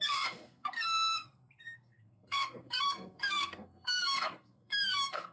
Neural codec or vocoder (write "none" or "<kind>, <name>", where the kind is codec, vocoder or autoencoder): codec, SNAC